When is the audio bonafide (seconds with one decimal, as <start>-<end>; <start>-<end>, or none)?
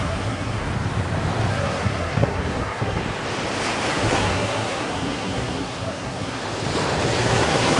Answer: 0.7-1.5; 3.0-3.9; 6.4-7.2